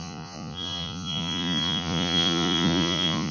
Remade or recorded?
remade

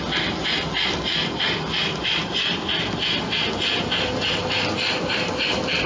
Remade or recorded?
recorded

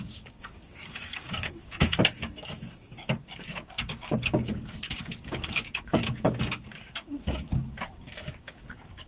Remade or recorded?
remade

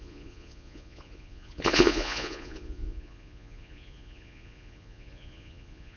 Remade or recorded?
remade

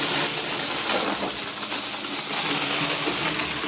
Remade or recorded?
recorded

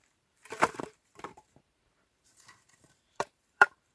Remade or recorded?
remade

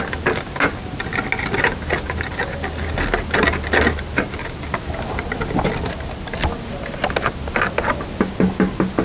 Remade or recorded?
recorded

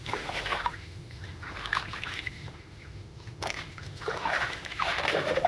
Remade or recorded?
remade